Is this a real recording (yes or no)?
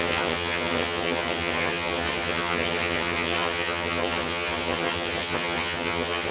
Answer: no